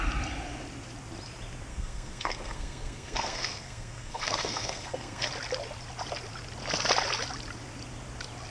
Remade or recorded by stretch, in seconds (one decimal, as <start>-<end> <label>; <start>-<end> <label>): 0.0-1.7 recorded; 1.7-5.3 remade; 5.3-8.5 recorded